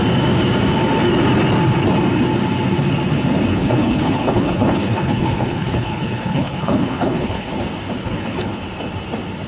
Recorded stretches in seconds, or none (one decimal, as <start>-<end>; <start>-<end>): 0.0-3.5; 7.5-8.0; 8.6-9.5